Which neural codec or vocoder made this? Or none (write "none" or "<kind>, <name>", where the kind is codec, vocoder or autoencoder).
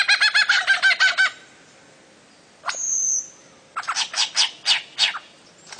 none